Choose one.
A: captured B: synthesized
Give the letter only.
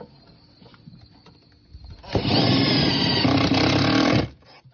A